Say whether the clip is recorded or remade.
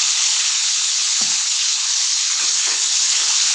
remade